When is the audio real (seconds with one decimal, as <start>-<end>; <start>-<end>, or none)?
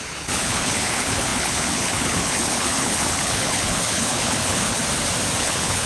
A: 4.8-5.4